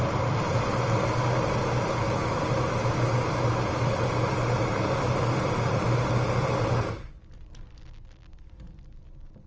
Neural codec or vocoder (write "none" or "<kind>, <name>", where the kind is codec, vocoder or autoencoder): none